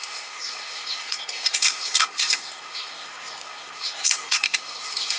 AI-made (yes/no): yes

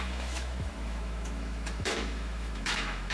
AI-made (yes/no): yes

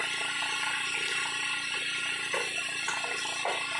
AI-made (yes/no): no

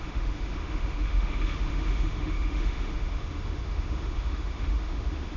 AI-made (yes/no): yes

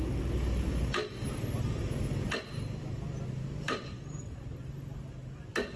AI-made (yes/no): no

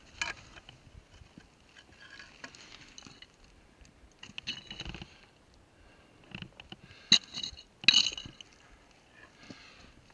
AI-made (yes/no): no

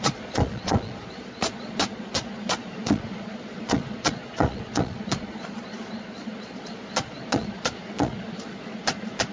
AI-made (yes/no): yes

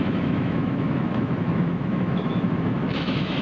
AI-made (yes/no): yes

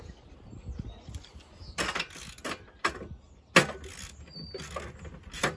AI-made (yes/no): no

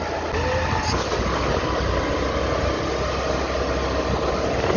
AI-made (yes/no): no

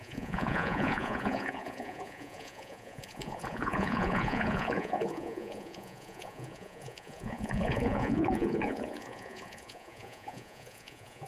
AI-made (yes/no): yes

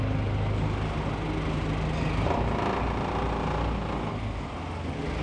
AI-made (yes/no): no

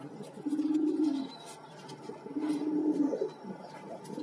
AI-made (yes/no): no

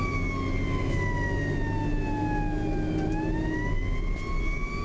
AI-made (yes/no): no